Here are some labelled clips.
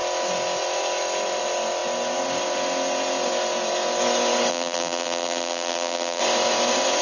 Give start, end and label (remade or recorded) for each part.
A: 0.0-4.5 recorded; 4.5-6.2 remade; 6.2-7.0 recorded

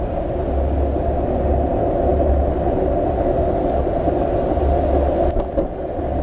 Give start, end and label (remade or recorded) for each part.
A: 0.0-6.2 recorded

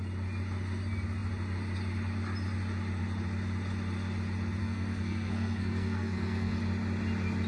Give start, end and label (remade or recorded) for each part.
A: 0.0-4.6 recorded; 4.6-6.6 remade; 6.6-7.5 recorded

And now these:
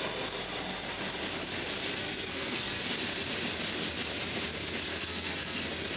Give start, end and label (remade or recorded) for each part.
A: 0.0-2.0 recorded; 2.0-2.8 remade; 2.8-4.9 recorded; 4.9-5.6 remade; 5.6-6.0 recorded

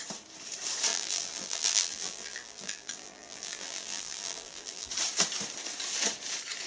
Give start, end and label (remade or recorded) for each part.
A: 0.0-0.9 recorded; 0.9-4.9 remade; 4.9-6.7 recorded

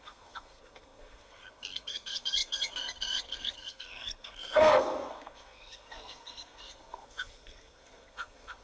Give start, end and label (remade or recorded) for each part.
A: 0.0-8.6 remade

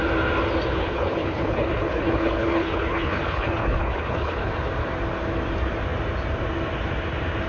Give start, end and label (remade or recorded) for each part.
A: 0.0-0.8 recorded; 0.8-4.5 remade; 4.5-7.5 recorded